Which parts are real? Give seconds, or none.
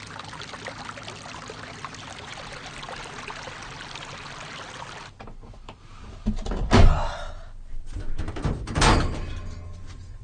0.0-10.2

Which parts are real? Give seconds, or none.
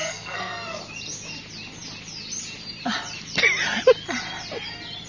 0.8-5.1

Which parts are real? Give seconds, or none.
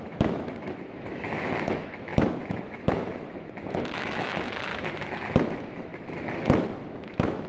4.7-5.4